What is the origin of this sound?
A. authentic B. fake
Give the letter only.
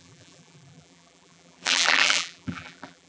B